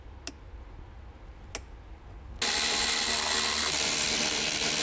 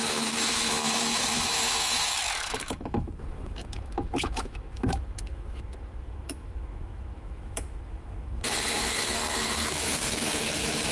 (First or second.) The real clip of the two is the first